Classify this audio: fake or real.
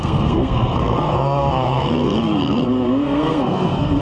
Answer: fake